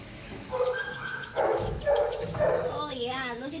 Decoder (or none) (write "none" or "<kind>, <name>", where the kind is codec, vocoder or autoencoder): autoencoder, DAC-VAE